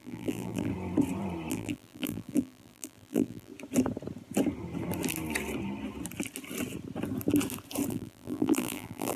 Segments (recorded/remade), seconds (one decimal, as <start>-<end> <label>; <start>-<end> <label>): 0.0-0.7 remade; 0.7-1.5 recorded; 1.5-3.5 remade; 3.5-7.9 recorded; 7.9-9.2 remade